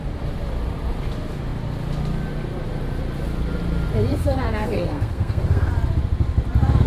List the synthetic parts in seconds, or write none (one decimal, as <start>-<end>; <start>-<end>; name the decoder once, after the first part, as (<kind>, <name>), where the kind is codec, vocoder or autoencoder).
4.1-5.7 (codec, SNAC)